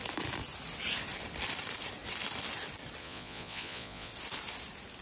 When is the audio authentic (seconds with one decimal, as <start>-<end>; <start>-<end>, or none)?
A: 0.0-3.0; 4.1-5.0